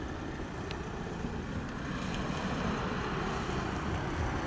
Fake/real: real